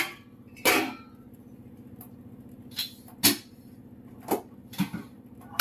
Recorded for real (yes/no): yes